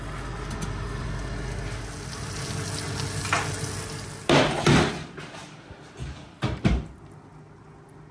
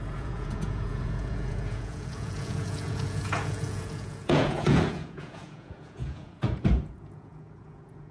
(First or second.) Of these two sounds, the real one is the first